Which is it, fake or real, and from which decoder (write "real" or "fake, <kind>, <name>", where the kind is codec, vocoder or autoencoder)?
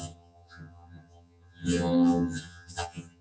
fake, vocoder, HiFi-GAN